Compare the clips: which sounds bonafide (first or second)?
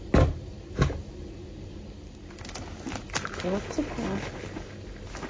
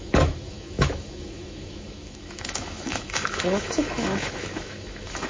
first